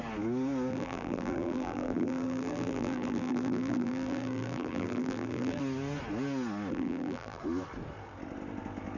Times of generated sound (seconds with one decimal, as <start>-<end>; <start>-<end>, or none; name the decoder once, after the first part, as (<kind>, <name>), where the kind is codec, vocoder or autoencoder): 0.7-5.6 (vocoder, BigVGAN v2); 6.7-7.4